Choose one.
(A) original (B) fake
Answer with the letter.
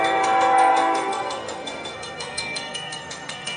B